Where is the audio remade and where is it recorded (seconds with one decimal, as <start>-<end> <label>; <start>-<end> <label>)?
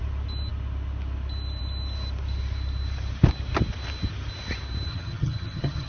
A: 0.0-4.9 recorded; 4.9-5.9 remade